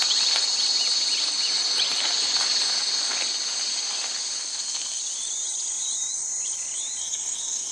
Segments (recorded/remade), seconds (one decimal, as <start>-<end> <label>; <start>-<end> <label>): 0.0-4.4 recorded; 4.4-5.0 remade; 5.0-7.0 recorded; 7.0-7.7 remade